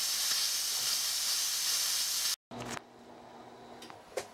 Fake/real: real